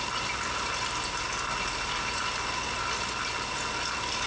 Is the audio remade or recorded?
recorded